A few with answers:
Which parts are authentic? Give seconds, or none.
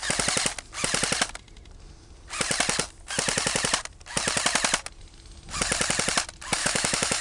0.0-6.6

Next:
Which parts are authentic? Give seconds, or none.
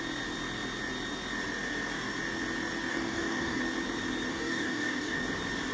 0.0-2.9; 3.6-4.3; 5.2-5.7